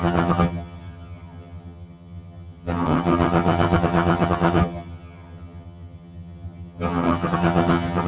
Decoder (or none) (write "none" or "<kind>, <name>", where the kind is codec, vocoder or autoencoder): vocoder, HiFi-GAN